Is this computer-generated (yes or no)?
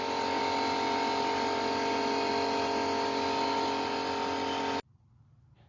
no